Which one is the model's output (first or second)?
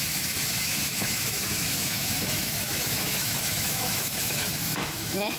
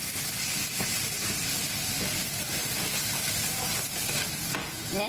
first